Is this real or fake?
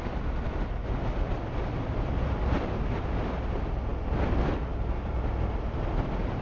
real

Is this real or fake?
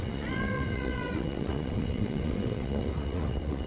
fake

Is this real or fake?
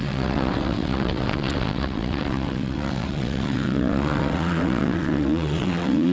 fake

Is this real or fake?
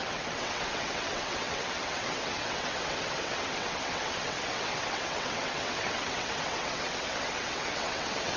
fake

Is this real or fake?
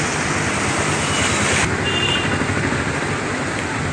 real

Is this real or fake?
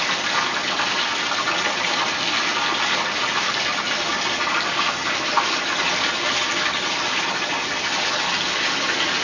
real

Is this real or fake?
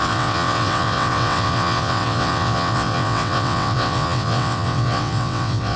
fake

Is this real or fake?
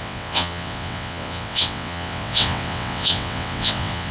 fake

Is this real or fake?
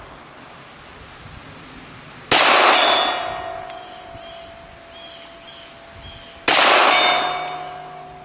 real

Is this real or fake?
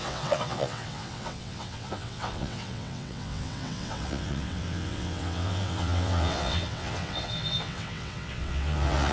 fake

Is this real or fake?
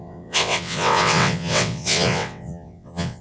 fake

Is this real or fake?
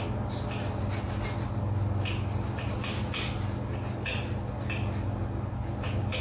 real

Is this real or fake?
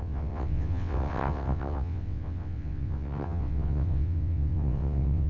fake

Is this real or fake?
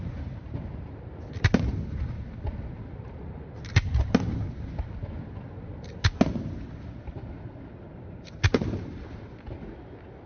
real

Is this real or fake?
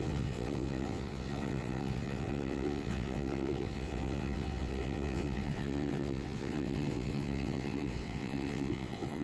fake